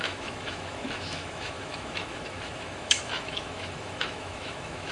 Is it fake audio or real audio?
fake